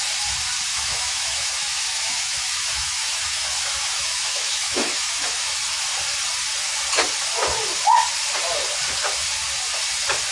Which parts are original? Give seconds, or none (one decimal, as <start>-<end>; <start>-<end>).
0.0-0.7; 5.6-10.3